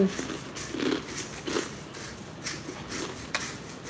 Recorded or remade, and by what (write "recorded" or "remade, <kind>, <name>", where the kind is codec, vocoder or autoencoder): recorded